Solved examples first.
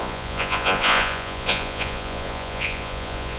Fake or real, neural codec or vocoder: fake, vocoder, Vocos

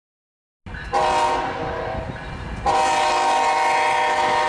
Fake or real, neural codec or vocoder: real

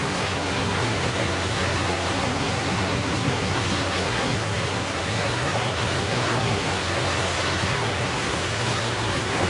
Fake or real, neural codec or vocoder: fake, codec, SNAC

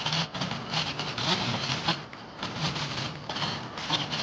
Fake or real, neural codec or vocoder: real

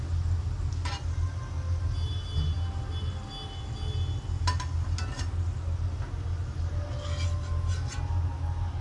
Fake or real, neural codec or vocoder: real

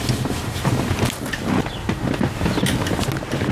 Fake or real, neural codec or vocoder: real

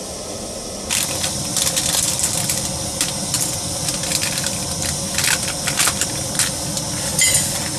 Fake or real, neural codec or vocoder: real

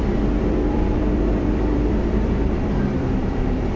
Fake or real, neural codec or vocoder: fake, vocoder, BigVGAN v2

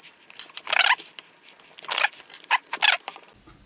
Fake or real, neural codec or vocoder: real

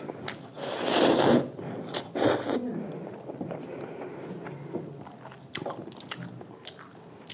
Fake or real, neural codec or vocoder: real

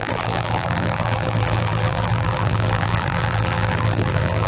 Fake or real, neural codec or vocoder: fake, vocoder, BigVGAN v2